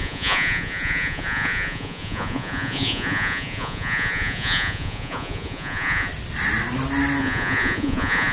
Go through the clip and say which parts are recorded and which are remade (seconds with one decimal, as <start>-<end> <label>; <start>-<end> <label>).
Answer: 0.0-6.1 remade; 6.1-7.2 recorded; 7.2-8.3 remade